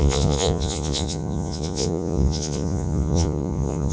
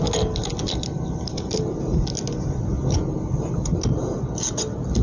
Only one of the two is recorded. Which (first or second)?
second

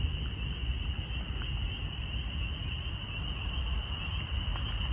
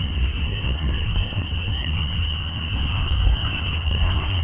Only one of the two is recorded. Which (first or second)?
first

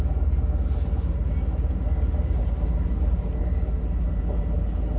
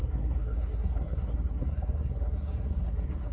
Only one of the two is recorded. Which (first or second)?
first